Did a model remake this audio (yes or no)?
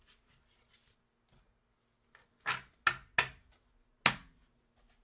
no